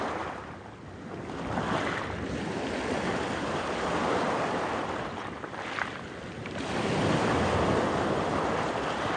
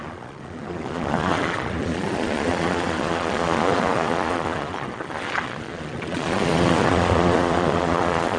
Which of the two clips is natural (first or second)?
first